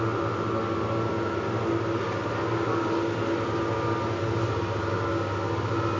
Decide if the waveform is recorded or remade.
recorded